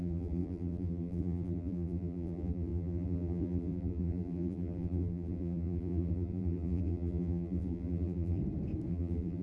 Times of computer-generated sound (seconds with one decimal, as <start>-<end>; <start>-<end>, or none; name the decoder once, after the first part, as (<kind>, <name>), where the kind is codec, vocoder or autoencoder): 0.0-8.4 (vocoder, BigVGAN v2); 8.9-9.4